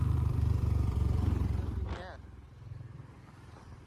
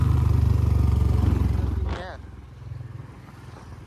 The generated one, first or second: first